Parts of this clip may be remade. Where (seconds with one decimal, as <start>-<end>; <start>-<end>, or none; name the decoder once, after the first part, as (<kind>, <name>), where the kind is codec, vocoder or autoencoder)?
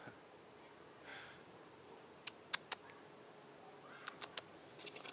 none